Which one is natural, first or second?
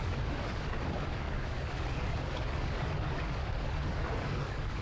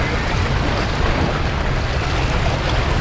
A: second